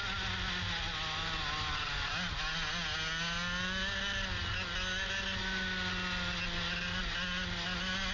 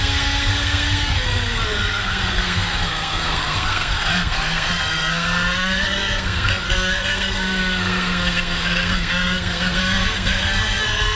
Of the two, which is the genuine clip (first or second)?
first